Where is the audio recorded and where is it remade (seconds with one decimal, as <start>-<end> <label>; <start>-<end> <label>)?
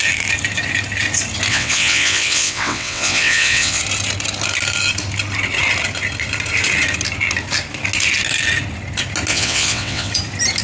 0.0-1.5 recorded; 1.5-3.8 remade; 3.8-9.3 recorded; 9.3-10.1 remade; 10.1-10.6 recorded